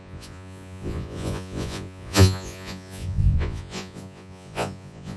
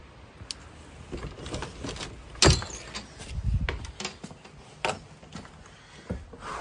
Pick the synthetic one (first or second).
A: first